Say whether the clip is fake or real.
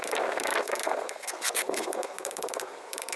fake